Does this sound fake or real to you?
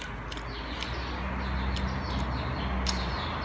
real